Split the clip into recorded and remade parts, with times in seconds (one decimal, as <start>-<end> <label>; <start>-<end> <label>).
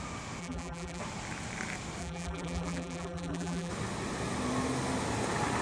0.0-0.4 recorded; 0.4-1.0 remade; 1.0-2.0 recorded; 2.0-3.7 remade; 3.7-5.6 recorded